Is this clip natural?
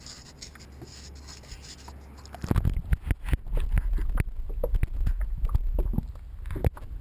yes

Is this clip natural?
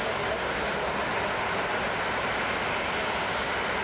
yes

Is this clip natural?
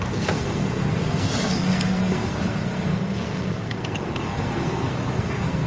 no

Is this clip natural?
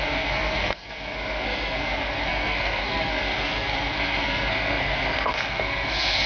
no